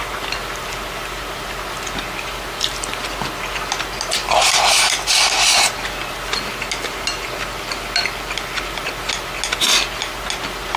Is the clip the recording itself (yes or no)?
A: yes